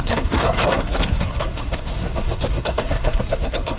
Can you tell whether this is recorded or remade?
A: remade